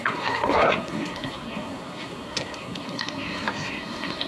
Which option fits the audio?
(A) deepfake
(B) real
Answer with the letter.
A